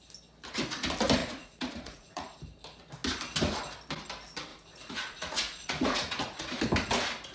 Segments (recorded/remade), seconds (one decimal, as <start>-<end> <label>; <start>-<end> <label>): 0.0-1.2 recorded; 1.2-2.4 remade; 2.4-4.5 recorded; 4.5-6.6 remade; 6.6-7.3 recorded